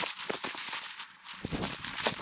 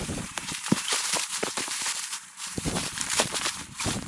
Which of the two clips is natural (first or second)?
first